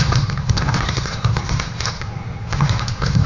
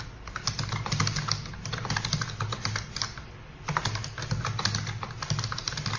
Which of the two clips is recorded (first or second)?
second